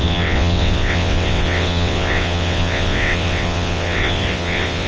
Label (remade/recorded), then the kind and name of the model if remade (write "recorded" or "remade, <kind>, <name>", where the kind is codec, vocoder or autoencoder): remade, vocoder, WaveNeXt